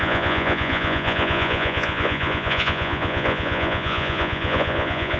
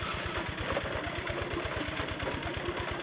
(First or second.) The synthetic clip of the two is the first